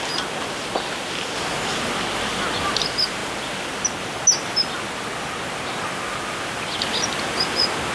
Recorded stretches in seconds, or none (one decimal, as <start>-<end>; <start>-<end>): 0.0-7.9